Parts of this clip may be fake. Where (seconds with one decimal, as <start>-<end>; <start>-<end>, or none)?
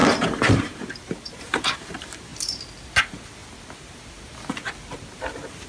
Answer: 0.0-2.3; 3.0-3.4; 5.2-5.7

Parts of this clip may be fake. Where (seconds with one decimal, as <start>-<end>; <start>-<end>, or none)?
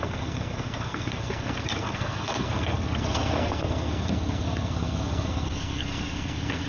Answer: 0.0-6.7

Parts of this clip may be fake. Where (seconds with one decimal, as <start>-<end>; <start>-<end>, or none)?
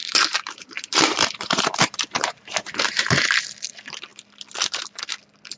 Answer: 0.0-3.4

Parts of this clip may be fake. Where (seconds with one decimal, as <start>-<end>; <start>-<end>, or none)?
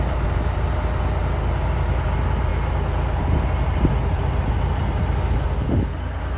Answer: none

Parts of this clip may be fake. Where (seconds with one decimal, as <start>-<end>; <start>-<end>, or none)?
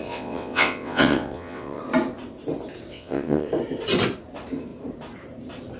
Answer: 0.0-1.8; 2.9-3.5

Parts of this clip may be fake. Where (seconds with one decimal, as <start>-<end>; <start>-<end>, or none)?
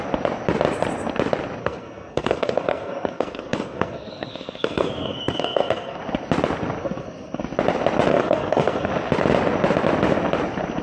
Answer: 1.6-6.0; 6.8-7.4; 8.1-8.9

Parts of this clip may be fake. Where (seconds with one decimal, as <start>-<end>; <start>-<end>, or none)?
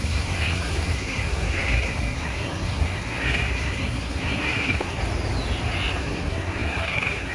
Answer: 0.0-5.0; 6.0-7.3